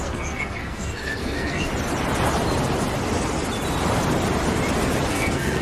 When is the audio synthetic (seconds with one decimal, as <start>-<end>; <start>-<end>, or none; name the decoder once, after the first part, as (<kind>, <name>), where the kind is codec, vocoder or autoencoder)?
0.0-1.7 (codec, SNAC); 5.1-5.6